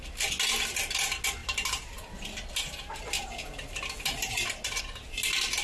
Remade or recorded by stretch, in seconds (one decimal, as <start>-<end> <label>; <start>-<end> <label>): 0.0-5.6 recorded